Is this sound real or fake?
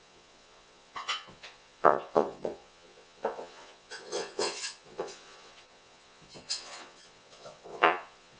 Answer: fake